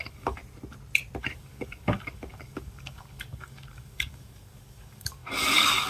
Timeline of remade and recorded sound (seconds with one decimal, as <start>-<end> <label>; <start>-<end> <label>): 0.0-0.4 remade; 0.4-1.2 recorded; 1.2-5.9 remade